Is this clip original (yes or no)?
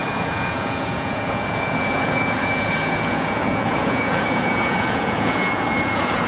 no